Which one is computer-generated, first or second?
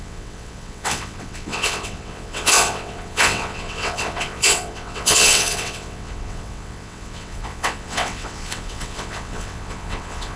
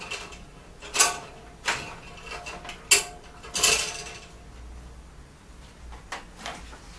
first